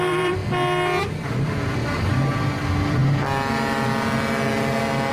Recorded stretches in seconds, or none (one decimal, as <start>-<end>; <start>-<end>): 0.4-1.0; 3.0-5.1